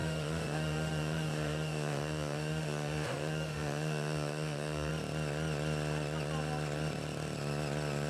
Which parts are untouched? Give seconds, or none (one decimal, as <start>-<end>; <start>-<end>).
4.9-8.1

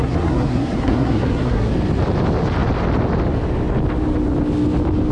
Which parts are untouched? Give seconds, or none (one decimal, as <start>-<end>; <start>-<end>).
1.7-5.1

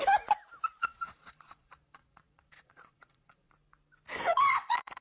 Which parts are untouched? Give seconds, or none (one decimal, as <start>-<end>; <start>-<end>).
0.0-0.8; 3.5-4.3

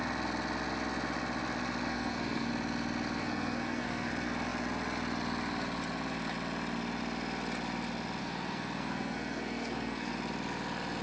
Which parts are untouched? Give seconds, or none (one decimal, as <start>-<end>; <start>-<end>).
0.0-1.9; 2.5-3.2; 4.1-8.2; 10.1-11.0